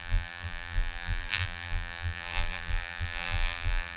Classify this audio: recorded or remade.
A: remade